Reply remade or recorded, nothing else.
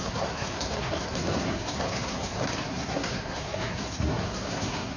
remade